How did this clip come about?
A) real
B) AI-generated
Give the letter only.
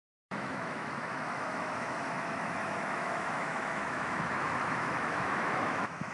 B